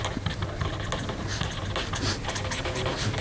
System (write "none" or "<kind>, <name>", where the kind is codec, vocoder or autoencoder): none